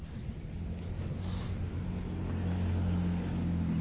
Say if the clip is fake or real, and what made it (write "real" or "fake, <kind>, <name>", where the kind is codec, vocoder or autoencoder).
real